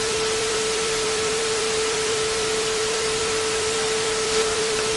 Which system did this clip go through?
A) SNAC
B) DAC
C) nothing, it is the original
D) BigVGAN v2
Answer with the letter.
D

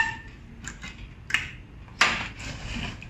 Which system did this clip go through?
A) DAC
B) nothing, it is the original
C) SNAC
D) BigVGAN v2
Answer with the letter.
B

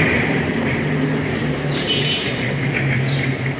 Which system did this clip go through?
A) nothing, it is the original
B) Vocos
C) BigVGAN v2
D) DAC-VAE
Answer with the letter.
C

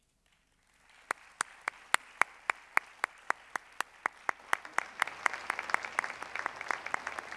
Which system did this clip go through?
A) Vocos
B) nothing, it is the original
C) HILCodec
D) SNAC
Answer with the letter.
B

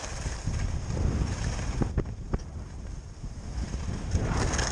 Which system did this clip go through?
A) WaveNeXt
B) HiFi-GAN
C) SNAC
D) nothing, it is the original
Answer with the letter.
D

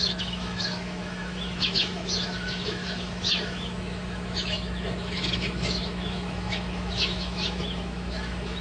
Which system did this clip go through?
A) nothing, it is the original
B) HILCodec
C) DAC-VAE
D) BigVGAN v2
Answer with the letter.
C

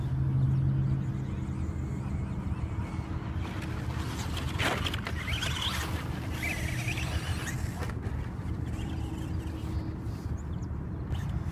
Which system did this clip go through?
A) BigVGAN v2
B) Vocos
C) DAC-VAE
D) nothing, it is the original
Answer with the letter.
D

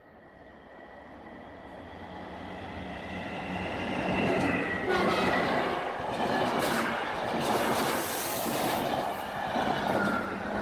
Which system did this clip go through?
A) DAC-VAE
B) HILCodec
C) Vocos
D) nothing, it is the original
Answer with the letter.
D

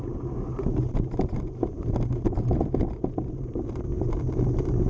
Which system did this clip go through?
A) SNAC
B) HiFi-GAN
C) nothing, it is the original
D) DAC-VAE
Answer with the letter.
C